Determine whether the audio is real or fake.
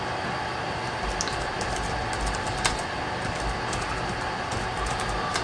real